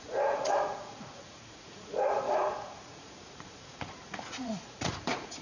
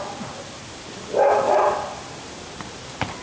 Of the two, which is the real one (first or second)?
second